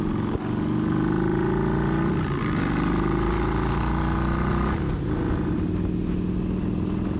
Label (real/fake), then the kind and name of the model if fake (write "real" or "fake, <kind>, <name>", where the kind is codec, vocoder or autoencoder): real